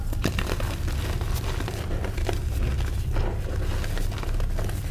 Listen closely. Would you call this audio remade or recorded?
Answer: recorded